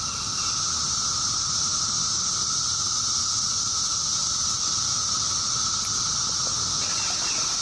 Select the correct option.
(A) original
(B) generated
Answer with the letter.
A